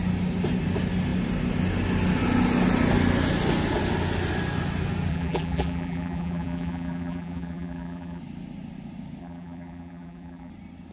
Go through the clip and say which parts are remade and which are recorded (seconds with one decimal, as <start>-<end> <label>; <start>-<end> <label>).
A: 0.0-5.1 recorded; 5.1-8.2 remade; 8.2-9.2 recorded; 9.2-10.5 remade; 10.5-10.9 recorded